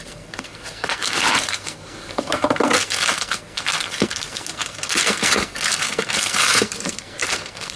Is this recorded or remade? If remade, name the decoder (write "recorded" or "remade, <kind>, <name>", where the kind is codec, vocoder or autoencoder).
remade, codec, SNAC